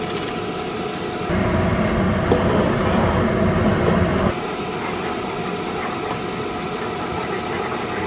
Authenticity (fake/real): fake